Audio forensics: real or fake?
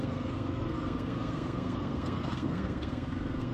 fake